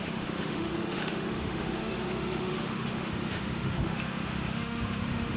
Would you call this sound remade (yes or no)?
yes